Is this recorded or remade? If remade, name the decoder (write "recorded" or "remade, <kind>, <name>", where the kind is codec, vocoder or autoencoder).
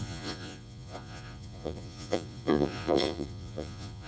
remade, vocoder, Vocos